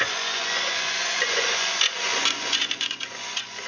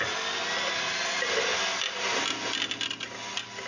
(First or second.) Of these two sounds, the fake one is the first